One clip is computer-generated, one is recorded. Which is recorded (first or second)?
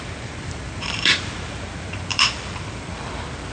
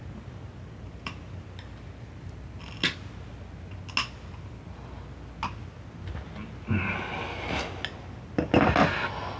second